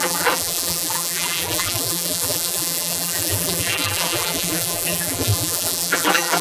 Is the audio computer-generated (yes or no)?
yes